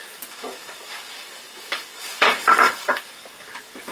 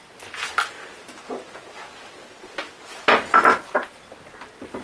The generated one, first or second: first